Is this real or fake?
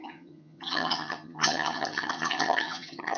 fake